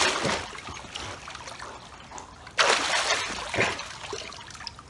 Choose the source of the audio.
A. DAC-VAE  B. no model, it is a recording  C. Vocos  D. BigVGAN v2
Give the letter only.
B